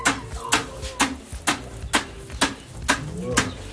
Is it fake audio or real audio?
real